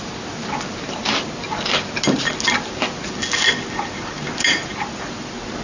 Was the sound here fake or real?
real